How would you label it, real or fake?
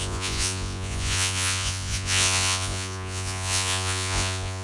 fake